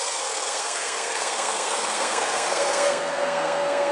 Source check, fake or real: fake